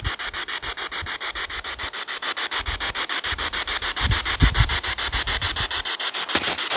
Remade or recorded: recorded